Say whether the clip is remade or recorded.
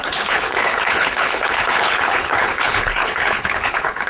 remade